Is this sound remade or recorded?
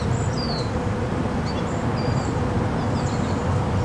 recorded